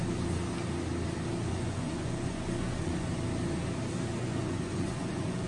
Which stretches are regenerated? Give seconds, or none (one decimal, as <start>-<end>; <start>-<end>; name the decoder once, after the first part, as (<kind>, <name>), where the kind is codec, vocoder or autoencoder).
1.5-3.2 (vocoder, Vocos); 4.2-5.5